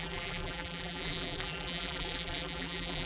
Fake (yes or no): yes